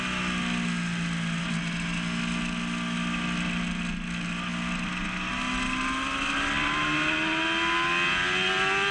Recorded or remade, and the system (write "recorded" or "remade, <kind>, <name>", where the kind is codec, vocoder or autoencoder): recorded